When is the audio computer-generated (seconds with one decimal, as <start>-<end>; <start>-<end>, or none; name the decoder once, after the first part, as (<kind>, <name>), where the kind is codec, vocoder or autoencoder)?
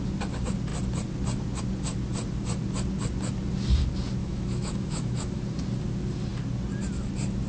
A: 4.2-5.4 (autoencoder, DAC-VAE)